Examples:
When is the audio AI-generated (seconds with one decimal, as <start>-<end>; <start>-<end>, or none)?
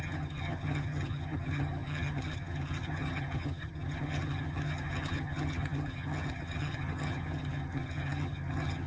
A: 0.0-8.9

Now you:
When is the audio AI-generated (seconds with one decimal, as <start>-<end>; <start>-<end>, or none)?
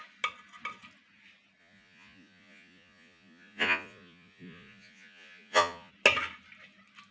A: 1.6-5.9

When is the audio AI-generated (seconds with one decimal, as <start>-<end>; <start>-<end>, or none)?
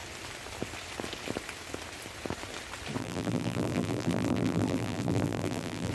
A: 3.0-5.9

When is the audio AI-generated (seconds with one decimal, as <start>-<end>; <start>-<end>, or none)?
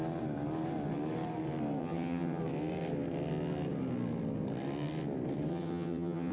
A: 1.8-2.4; 5.5-6.3